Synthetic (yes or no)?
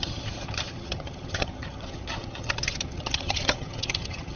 yes